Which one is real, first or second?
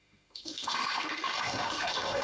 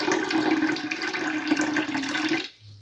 second